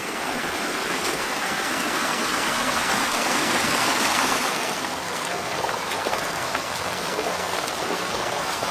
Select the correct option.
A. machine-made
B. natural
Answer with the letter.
A